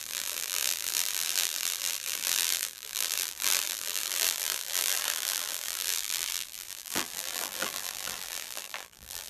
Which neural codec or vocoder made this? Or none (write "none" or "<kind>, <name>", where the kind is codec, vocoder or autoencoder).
vocoder, BigVGAN v2